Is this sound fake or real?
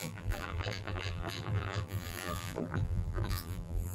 fake